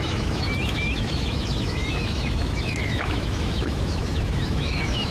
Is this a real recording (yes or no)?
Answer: no